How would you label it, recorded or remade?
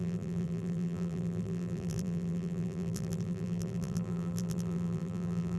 remade